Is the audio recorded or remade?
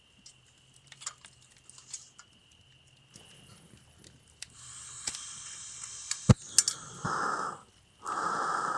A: recorded